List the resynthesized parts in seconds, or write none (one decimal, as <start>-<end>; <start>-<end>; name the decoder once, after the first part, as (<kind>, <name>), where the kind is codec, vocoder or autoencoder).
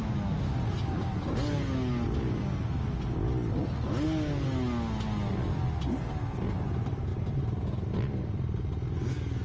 none